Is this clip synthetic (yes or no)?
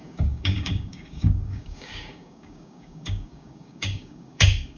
yes